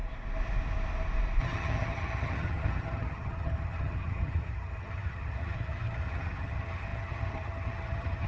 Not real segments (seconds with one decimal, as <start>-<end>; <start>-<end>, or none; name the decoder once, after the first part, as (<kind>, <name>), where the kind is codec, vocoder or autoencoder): 1.4-8.3 (vocoder, HiFi-GAN)

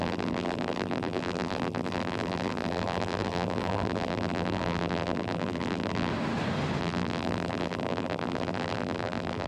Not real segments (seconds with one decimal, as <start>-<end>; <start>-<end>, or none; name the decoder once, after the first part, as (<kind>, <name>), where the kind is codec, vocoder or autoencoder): 0.0-6.1 (vocoder, BigVGAN v2); 6.8-9.5

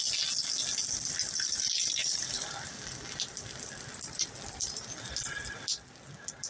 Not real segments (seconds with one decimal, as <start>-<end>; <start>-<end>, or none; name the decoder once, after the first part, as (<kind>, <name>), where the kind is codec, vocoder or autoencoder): 2.0-5.2 (vocoder, BigVGAN v2)

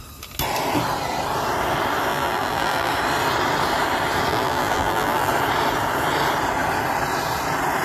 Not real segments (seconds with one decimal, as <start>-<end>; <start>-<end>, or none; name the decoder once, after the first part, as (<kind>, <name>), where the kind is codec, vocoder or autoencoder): 2.1-2.9 (vocoder, BigVGAN v2); 4.3-5.3

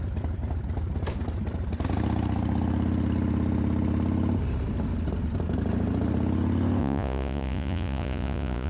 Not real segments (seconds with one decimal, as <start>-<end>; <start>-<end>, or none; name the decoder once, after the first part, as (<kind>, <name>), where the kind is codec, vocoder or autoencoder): 6.8-8.7 (vocoder, Vocos)